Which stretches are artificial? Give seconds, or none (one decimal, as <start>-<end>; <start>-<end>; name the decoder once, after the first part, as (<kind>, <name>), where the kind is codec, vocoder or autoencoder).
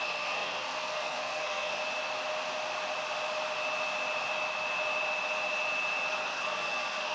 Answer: 0.0-1.8 (codec, SNAC); 6.1-7.1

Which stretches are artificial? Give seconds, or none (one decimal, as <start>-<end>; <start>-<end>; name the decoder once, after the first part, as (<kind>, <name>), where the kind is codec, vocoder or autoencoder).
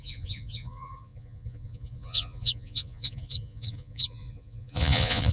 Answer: 0.0-5.3 (vocoder, Vocos)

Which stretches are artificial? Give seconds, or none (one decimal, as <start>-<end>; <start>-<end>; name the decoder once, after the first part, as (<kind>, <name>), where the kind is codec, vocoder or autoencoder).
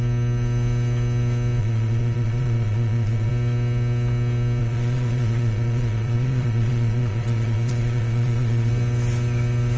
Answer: 1.6-3.3 (vocoder, Vocos); 4.6-8.7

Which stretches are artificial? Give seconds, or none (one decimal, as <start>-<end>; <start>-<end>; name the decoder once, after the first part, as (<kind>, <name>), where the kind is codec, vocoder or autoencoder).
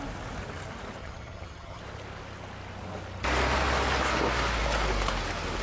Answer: 1.0-1.8 (vocoder, HiFi-GAN)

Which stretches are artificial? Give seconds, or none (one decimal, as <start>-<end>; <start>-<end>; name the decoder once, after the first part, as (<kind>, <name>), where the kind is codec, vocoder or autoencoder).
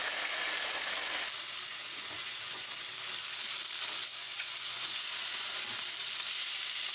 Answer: 1.7-2.7 (vocoder, Vocos); 4.1-5.5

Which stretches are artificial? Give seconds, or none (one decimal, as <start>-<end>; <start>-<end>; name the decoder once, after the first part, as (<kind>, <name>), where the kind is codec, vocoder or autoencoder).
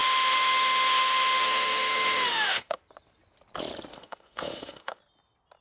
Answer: 0.0-2.8 (autoencoder, DAC-VAE); 3.9-5.0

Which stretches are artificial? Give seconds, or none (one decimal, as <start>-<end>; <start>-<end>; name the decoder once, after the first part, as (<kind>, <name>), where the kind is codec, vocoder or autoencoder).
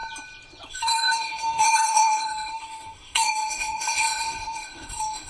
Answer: 0.7-5.3 (autoencoder, DAC-VAE)